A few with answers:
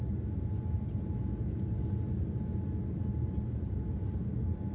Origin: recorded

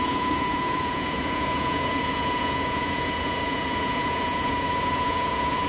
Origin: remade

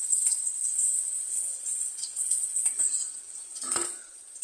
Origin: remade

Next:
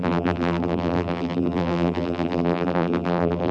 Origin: remade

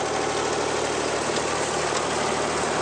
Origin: recorded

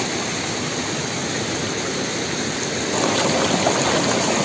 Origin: recorded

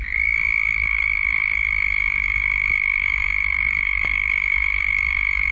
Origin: remade